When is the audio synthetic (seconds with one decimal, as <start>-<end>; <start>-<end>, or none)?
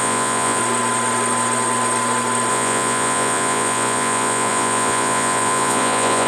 0.0-0.6; 2.5-6.3